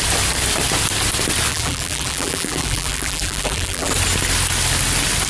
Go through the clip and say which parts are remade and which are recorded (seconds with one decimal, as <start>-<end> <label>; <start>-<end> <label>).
0.0-1.5 recorded; 1.5-3.9 remade; 3.9-5.3 recorded